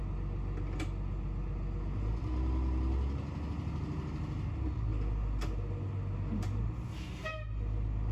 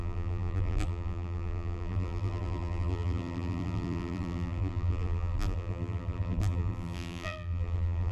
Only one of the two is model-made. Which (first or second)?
second